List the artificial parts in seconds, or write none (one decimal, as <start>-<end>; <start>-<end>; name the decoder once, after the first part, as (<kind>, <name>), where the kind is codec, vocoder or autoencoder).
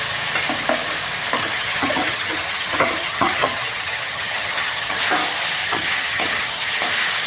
1.4-5.0 (vocoder, HiFi-GAN); 5.6-6.8